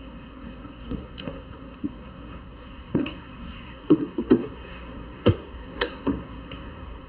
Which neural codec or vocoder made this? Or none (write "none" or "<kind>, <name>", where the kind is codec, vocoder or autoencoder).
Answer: codec, SNAC